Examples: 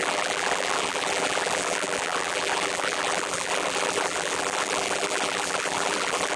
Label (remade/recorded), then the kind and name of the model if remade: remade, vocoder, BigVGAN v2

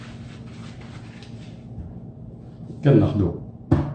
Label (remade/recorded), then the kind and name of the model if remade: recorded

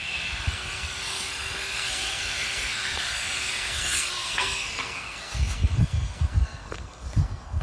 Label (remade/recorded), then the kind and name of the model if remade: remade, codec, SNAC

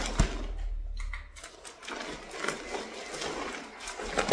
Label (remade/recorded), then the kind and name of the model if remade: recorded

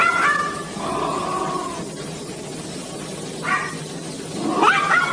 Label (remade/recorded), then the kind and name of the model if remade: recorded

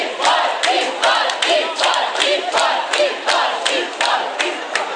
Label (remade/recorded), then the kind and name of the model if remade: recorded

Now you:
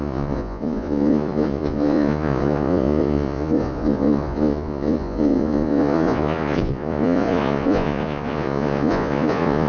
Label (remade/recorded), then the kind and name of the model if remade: remade, vocoder, Vocos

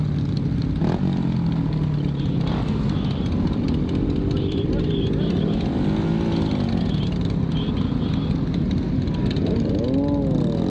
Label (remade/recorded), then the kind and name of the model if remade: recorded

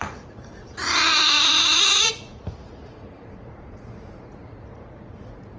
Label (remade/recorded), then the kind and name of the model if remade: remade, vocoder, Vocos